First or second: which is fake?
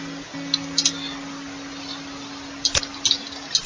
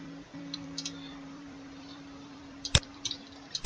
second